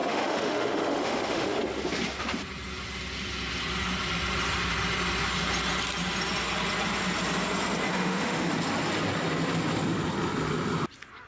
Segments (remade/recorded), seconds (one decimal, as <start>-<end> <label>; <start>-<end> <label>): 0.0-1.6 remade; 1.6-7.9 recorded; 7.9-8.5 remade; 8.5-11.3 recorded